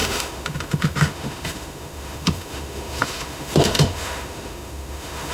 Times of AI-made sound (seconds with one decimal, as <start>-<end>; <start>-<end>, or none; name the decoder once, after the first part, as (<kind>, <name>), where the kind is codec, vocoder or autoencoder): 0.0-5.3 (autoencoder, DAC-VAE)